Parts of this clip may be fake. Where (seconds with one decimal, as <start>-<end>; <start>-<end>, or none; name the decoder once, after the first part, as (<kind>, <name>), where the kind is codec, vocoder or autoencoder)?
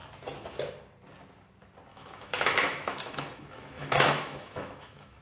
1.9-5.2 (autoencoder, DAC-VAE)